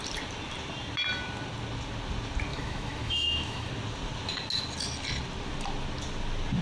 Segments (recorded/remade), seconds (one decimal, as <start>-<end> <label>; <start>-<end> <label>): 0.0-2.5 recorded; 2.5-3.7 remade; 3.7-6.6 recorded